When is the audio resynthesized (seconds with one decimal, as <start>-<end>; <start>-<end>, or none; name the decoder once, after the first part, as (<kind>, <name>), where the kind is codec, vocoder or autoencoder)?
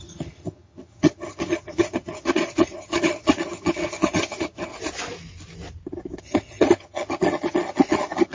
0.0-4.7 (vocoder, HiFi-GAN); 6.2-8.3